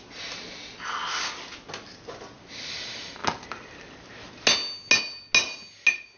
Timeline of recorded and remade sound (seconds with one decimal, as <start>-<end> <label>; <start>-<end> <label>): 0.0-6.2 recorded